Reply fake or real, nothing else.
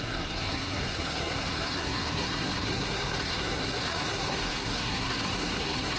fake